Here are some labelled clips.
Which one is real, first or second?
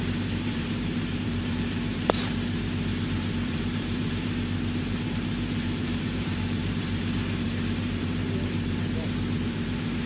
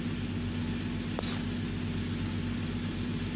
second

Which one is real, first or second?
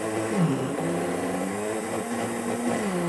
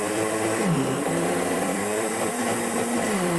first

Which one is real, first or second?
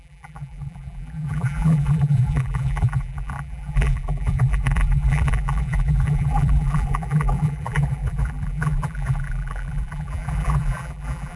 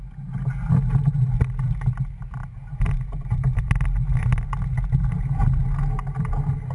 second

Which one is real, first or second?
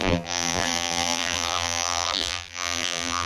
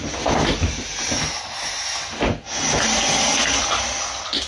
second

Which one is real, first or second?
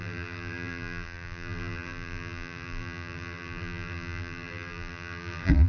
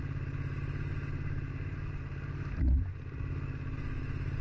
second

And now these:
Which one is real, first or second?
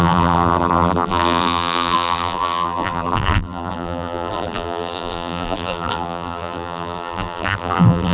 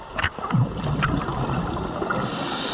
second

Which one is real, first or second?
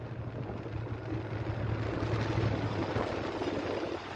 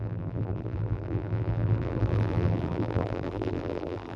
first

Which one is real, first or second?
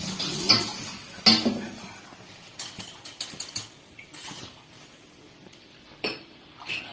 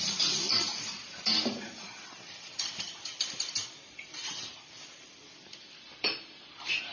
first